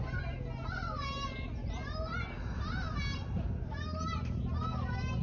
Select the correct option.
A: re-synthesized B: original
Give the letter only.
B